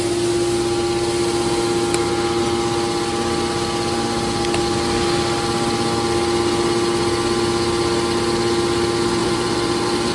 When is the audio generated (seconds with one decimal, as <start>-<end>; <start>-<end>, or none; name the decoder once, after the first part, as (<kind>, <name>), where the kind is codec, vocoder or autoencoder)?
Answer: 9.2-10.1 (vocoder, BigVGAN v2)